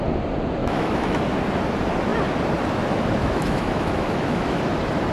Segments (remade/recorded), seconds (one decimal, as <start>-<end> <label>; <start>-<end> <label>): 0.0-0.6 recorded; 0.6-1.2 remade; 1.2-3.2 recorded; 3.2-4.6 remade; 4.6-5.1 recorded